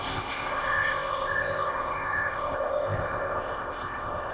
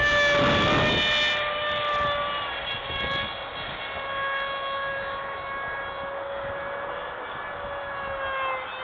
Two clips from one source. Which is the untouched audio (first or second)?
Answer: second